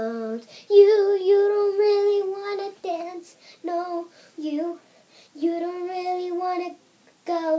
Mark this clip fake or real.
real